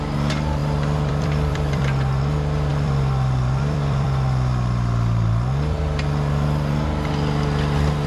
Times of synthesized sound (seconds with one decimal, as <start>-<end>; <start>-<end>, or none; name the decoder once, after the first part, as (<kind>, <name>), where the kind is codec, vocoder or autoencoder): 0.6-1.8 (vocoder, BigVGAN v2); 2.7-5.8